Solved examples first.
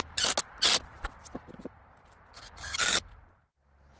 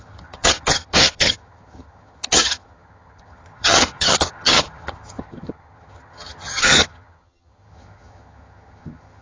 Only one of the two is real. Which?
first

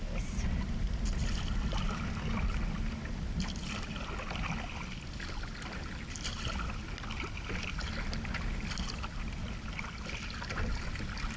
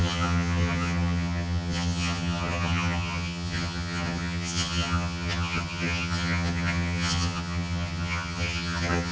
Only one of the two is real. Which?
first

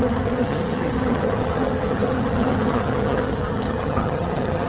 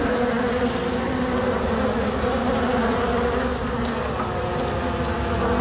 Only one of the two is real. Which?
second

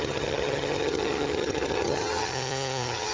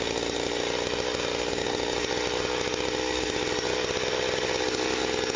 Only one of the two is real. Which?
second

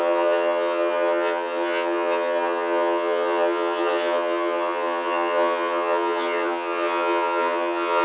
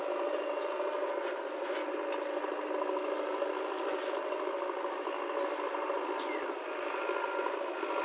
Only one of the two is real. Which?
second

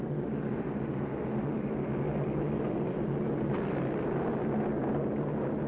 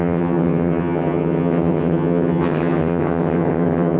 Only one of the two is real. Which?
first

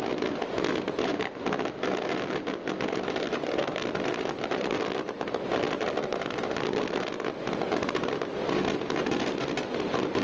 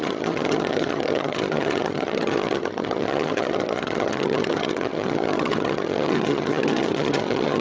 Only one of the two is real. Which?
first